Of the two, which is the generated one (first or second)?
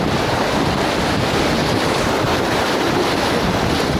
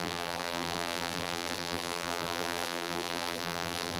second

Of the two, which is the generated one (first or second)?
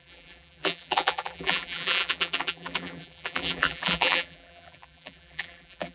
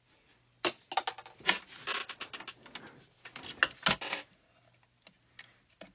first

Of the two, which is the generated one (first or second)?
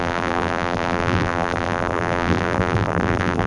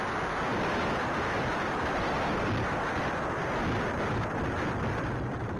first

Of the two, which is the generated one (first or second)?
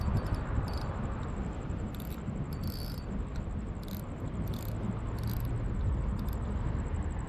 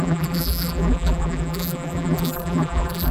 second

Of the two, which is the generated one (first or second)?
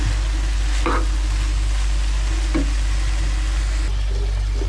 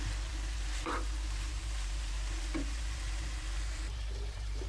second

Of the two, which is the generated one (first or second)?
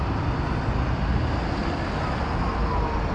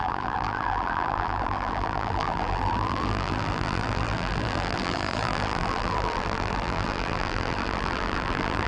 second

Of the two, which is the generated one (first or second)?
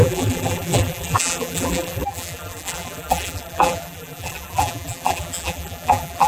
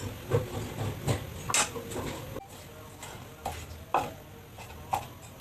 first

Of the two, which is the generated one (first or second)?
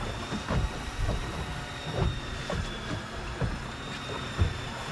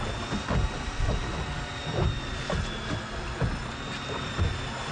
first